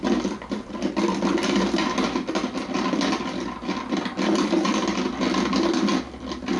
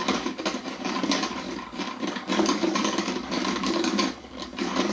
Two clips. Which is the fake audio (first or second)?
second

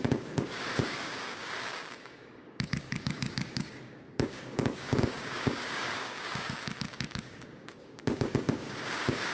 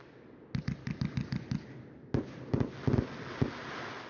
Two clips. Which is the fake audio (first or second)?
first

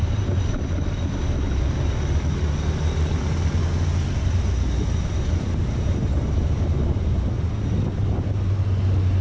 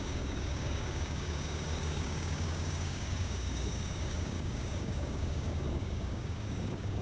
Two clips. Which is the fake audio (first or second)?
second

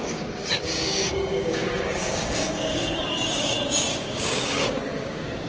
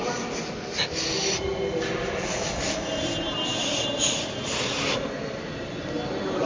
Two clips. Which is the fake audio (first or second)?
first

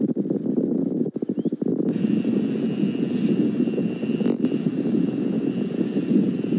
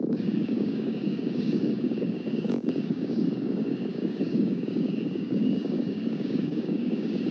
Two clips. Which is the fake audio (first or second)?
second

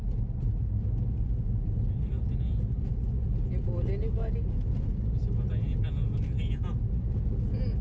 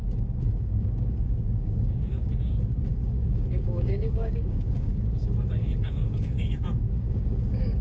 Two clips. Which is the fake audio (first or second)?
second